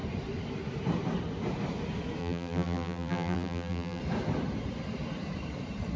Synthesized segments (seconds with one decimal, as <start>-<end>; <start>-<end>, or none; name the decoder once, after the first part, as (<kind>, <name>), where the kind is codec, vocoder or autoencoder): 2.2-4.0 (vocoder, BigVGAN v2)

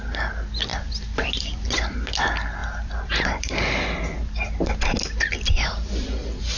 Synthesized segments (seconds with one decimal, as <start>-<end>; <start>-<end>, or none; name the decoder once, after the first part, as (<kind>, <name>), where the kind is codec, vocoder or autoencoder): 0.7-1.6 (vocoder, BigVGAN v2); 2.6-4.0

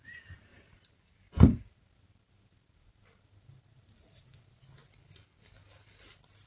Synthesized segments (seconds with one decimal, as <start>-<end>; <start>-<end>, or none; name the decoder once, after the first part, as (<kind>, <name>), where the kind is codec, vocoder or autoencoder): 0.5-4.4 (vocoder, BigVGAN v2)